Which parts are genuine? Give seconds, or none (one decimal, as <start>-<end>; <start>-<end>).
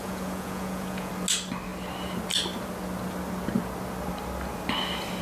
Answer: 1.1-5.2